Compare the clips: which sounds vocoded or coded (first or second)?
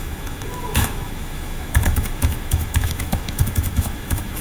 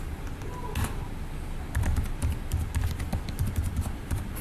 first